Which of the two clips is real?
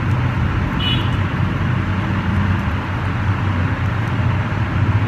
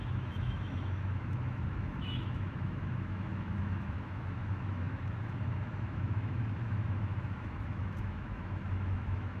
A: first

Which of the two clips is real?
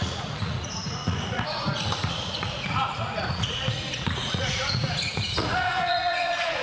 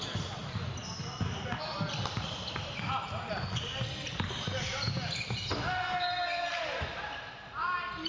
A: second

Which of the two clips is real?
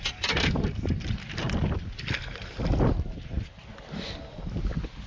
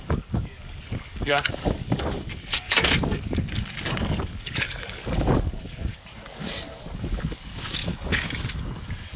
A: first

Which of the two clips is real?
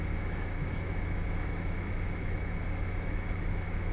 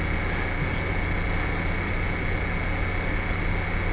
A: second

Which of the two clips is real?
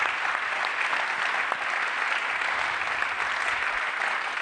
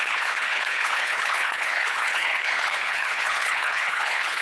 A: first